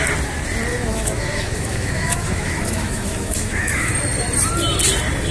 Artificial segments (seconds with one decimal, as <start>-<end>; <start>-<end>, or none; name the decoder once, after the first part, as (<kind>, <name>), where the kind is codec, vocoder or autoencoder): 0.7-3.9 (autoencoder, DAC-VAE)